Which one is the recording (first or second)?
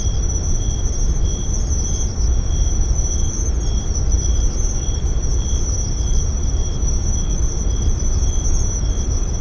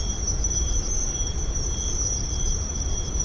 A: first